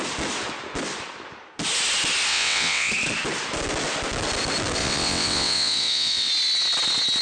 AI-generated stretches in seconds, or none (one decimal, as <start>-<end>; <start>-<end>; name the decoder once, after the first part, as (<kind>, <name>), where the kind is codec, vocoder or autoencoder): 2.3-2.9 (vocoder, WaveNeXt); 4.8-6.3